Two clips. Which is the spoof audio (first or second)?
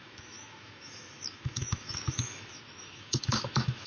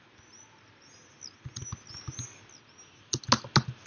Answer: first